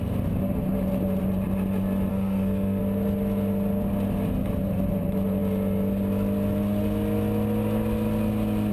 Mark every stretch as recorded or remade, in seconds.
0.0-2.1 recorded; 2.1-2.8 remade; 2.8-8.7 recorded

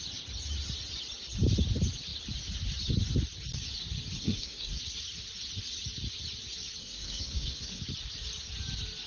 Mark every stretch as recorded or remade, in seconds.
0.0-4.2 recorded; 4.2-4.8 remade; 4.8-6.8 recorded; 6.8-7.8 remade; 7.8-9.1 recorded